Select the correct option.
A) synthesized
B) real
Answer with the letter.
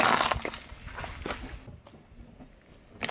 B